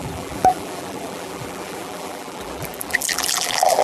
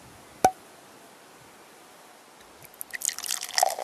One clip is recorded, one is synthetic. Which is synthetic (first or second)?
first